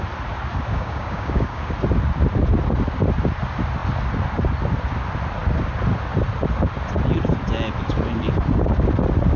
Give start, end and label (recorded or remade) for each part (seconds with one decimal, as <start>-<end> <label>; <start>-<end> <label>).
0.0-0.7 recorded; 0.7-1.7 remade; 1.7-9.4 recorded